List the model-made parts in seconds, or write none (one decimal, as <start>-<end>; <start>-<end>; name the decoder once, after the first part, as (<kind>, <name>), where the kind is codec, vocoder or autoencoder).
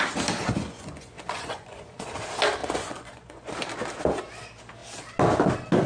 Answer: 0.4-2.1 (vocoder, Vocos); 2.6-3.5